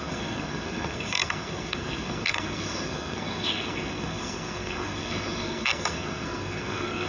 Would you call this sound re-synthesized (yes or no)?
yes